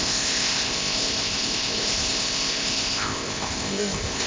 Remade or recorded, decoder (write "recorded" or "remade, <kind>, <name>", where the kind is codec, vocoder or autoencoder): remade, codec, ZipCodec